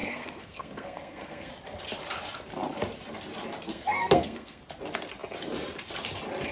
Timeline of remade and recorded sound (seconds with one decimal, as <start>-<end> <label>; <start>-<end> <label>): 0.0-1.5 remade; 1.5-3.7 recorded; 3.7-4.6 remade; 4.6-6.5 recorded